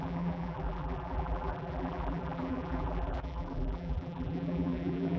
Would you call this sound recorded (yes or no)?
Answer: no